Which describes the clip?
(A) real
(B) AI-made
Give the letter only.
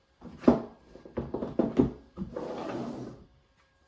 B